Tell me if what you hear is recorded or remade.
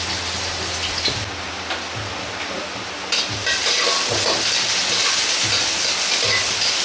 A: recorded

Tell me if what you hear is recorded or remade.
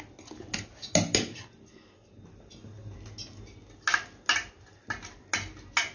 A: recorded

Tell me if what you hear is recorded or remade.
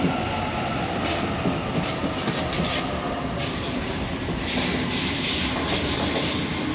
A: recorded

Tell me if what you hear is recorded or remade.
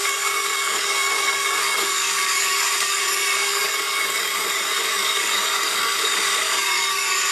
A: remade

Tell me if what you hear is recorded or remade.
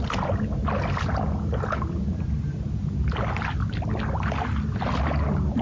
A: recorded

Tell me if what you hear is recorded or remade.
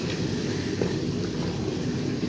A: recorded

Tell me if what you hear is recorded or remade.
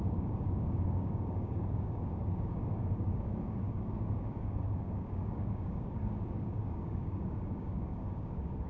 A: remade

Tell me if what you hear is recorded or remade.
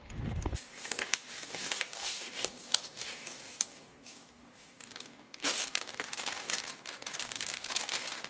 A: remade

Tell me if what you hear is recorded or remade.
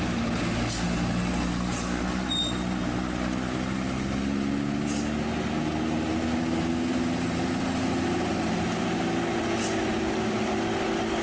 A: recorded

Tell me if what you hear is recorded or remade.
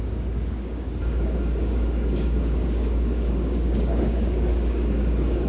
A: remade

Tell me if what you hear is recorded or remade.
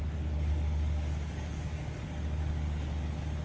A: remade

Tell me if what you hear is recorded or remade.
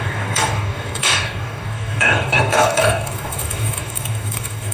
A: remade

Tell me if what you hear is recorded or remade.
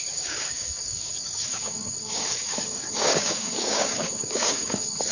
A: remade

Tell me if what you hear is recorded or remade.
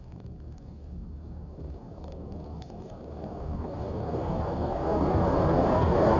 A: remade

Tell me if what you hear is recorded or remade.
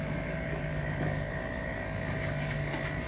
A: remade